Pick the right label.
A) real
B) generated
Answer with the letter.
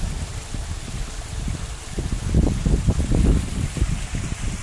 A